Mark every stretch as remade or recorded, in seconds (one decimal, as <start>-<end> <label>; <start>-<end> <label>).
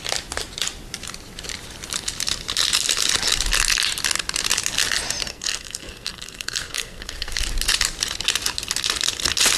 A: 0.0-5.3 recorded; 5.3-7.4 remade; 7.4-9.6 recorded